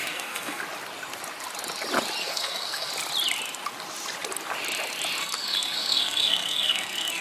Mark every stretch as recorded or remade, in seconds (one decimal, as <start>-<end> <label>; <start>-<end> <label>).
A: 0.0-0.6 remade; 0.6-2.2 recorded; 2.2-2.9 remade; 2.9-5.2 recorded; 5.2-7.2 remade